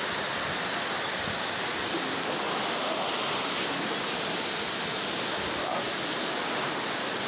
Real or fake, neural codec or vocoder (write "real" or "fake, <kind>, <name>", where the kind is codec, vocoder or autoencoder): real